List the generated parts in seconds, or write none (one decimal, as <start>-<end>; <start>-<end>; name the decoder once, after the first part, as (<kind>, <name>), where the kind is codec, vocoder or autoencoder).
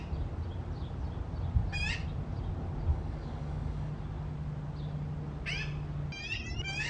2.9-3.9 (codec, DAC)